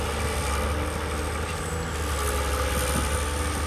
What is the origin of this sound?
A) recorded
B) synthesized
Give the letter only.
A